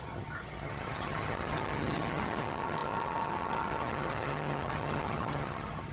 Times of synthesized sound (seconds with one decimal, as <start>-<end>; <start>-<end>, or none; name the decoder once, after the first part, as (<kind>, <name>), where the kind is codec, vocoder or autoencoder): 0.0-5.9 (vocoder, HiFi-GAN)

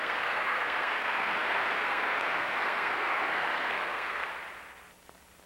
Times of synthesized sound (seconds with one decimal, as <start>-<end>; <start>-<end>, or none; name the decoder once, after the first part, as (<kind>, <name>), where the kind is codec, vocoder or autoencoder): 0.0-4.3 (codec, SNAC)

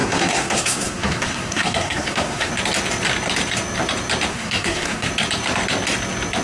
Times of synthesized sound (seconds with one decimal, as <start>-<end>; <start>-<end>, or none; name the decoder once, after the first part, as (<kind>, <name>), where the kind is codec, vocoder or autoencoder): 0.0-2.5 (codec, SNAC); 4.3-5.1

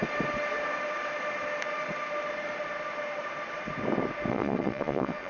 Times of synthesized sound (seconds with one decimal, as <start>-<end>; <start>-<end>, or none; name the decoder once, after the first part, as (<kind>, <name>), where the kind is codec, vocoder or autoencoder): 4.3-5.3 (vocoder, Vocos)

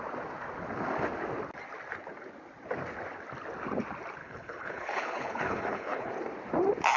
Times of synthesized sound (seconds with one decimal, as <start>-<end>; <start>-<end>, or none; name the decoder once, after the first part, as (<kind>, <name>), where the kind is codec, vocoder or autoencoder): 4.2-6.1 (codec, HILCodec)

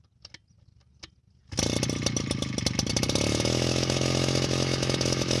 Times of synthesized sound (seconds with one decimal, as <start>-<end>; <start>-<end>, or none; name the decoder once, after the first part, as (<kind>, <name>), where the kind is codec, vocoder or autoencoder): 3.3-5.4 (autoencoder, DAC-VAE)